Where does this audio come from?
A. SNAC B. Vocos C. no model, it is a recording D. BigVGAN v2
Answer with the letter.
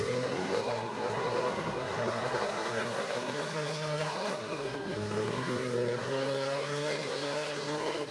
A